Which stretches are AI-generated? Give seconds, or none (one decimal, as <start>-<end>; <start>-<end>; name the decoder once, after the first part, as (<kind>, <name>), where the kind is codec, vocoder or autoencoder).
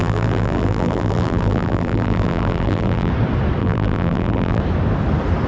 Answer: 0.0-3.1 (vocoder, BigVGAN v2); 3.6-4.6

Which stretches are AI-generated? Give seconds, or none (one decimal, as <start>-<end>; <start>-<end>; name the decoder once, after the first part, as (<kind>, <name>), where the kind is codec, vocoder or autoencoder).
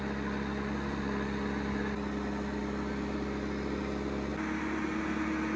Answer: none